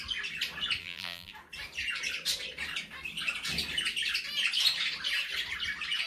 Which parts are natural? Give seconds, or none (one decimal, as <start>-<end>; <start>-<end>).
0.0-0.8; 1.3-6.1